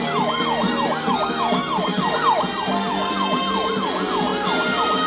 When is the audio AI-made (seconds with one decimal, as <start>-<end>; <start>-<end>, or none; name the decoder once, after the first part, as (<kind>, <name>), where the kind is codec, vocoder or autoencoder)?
none